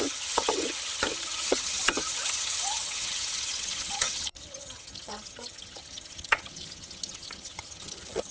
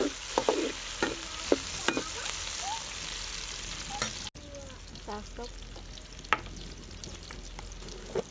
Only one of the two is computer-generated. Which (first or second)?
first